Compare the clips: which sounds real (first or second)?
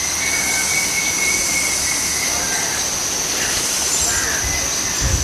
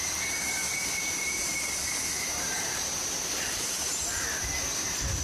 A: first